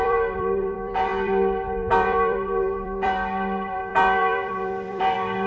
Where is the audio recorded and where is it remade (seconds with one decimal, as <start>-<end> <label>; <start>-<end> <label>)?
0.0-5.5 remade